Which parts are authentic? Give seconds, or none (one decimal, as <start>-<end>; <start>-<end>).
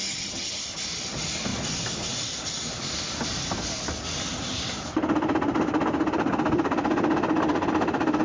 0.6-8.2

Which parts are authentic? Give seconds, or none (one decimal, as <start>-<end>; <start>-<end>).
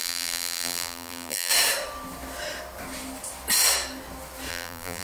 1.5-4.5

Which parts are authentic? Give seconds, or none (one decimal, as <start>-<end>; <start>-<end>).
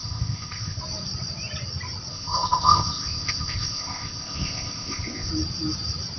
0.8-2.1; 5.3-6.2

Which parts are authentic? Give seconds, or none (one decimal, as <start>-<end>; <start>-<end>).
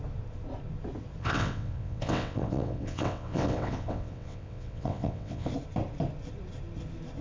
0.0-1.2; 5.5-7.2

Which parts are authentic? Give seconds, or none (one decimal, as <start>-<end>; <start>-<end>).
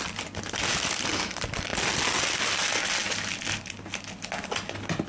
0.0-5.1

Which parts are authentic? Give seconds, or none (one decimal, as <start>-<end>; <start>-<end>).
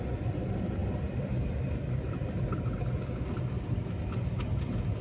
0.0-5.0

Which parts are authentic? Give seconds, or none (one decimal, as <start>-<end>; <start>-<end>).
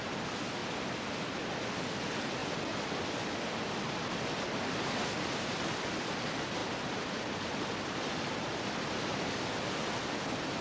0.6-1.5; 2.4-4.1